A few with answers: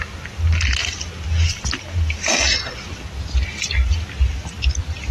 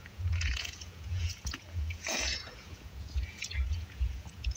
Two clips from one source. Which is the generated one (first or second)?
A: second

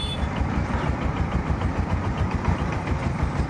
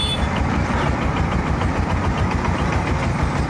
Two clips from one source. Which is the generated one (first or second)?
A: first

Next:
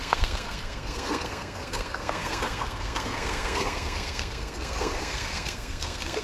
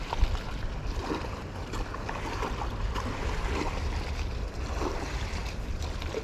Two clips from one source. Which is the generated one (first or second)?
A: first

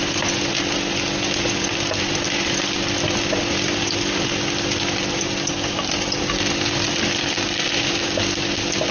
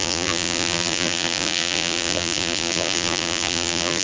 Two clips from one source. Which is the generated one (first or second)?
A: second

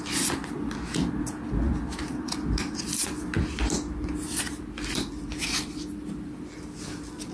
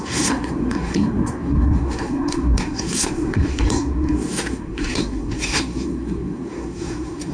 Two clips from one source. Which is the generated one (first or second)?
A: second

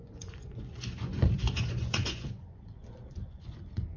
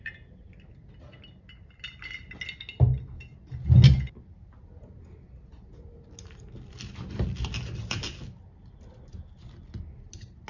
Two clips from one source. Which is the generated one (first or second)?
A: first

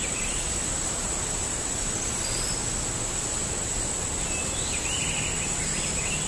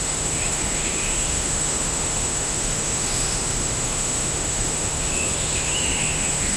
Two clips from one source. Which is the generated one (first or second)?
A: second